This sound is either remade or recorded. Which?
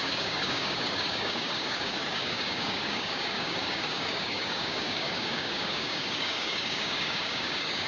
remade